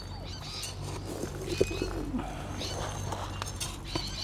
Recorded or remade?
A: recorded